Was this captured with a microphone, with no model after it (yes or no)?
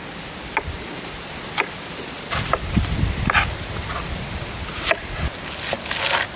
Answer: yes